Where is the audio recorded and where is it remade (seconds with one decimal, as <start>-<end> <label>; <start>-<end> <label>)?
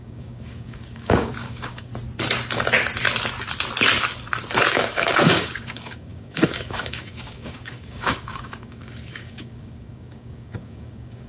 0.0-1.9 remade; 1.9-4.7 recorded; 4.7-11.3 remade